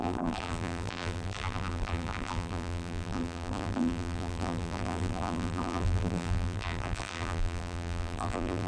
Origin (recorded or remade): remade